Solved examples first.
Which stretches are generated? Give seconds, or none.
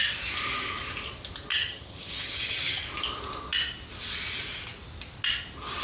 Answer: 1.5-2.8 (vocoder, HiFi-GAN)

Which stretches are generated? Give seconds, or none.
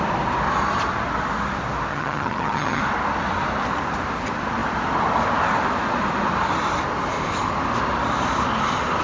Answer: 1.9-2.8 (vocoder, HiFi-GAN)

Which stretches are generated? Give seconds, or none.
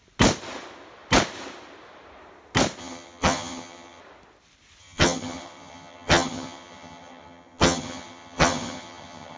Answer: 2.8-4.0 (vocoder, HiFi-GAN); 4.8-9.4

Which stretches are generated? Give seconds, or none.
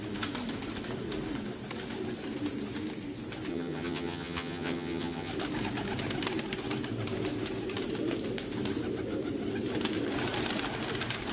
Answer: 3.5-5.3 (vocoder, HiFi-GAN)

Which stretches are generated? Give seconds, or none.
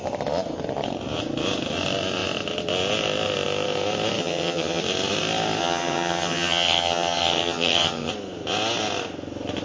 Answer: 4.2-4.8 (vocoder, HiFi-GAN); 5.6-8.1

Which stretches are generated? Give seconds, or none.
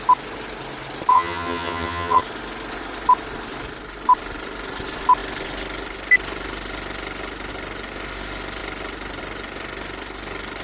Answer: 1.1-2.2 (vocoder, HiFi-GAN)